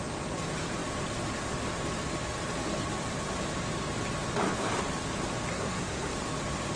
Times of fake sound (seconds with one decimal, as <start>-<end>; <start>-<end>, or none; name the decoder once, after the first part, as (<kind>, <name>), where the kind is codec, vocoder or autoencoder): 5.5-6.1 (codec, SNAC)